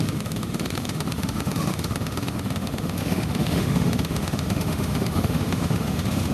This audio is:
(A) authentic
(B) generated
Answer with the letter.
B